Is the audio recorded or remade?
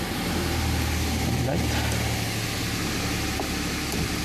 recorded